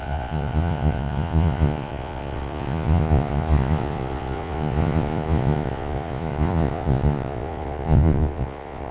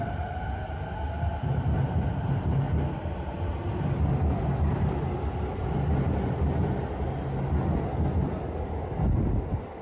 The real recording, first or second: second